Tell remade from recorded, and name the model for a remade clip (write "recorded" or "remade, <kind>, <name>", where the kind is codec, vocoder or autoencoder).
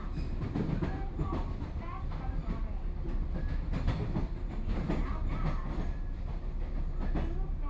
recorded